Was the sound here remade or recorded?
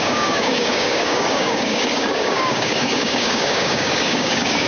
remade